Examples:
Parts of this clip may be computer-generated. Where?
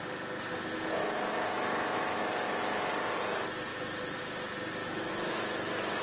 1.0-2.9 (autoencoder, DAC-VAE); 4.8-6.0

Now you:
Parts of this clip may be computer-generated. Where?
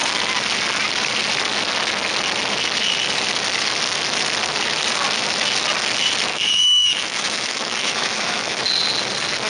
6.3-8.6 (autoencoder, DAC-VAE)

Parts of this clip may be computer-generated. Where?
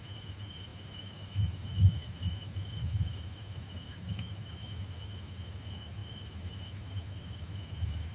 0.0-8.1 (autoencoder, DAC-VAE)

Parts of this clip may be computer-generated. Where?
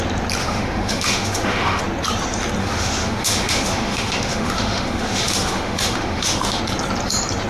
0.4-1.8 (autoencoder, DAC-VAE); 2.6-6.6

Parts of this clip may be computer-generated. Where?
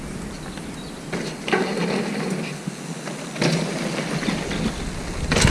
none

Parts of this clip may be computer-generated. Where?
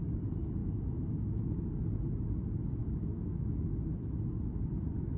0.6-1.7 (autoencoder, DAC-VAE); 2.8-4.2